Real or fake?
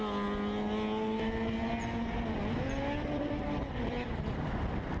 real